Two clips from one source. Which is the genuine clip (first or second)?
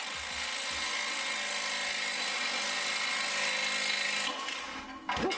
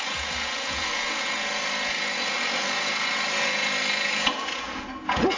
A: first